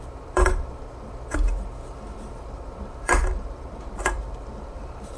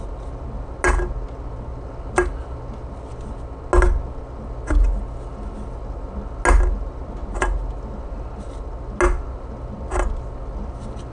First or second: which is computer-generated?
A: first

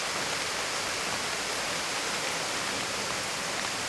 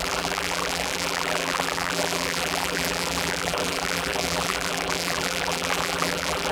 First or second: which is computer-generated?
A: second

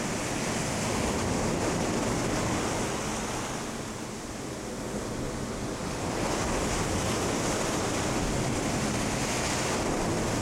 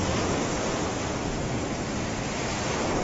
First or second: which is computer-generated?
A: second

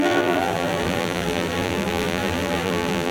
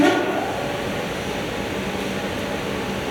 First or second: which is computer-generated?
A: first